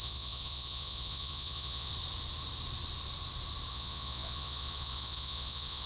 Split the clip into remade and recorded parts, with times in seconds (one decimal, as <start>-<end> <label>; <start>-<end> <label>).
0.0-1.9 remade; 1.9-3.7 recorded; 3.7-5.9 remade